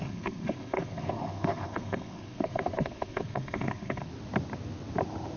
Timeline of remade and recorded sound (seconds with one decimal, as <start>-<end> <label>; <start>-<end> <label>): 0.0-4.1 remade; 4.1-5.4 recorded